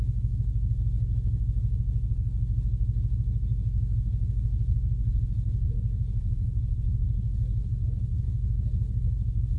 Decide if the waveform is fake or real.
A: fake